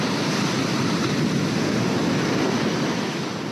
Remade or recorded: recorded